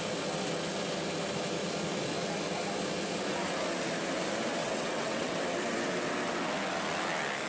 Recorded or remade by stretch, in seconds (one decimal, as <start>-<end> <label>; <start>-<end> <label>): 0.0-4.6 recorded; 4.6-5.4 remade; 5.4-7.5 recorded